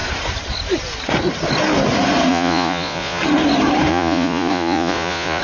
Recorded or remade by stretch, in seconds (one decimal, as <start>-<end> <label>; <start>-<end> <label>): 0.0-2.3 recorded; 2.3-3.2 remade; 3.2-3.9 recorded; 3.9-5.4 remade